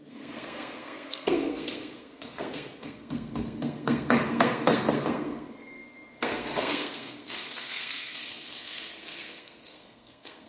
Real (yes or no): no